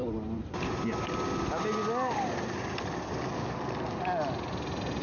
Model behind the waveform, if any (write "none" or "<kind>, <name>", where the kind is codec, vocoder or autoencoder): none